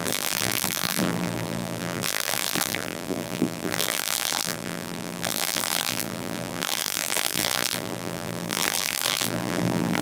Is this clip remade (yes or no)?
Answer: yes